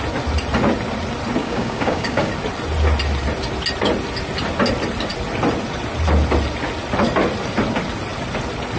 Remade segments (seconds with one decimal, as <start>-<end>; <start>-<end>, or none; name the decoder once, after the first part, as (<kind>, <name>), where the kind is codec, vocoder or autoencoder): 1.4-2.3 (codec, DAC)